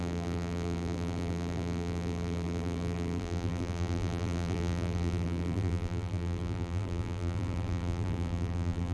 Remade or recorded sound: remade